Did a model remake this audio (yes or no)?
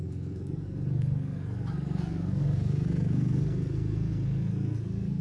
yes